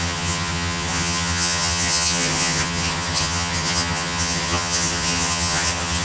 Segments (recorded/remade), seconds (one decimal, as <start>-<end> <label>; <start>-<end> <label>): 0.0-6.0 remade